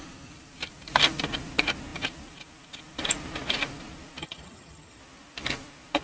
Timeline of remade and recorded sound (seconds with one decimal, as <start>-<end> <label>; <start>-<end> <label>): 0.0-4.2 recorded; 4.2-5.0 remade; 5.0-6.0 recorded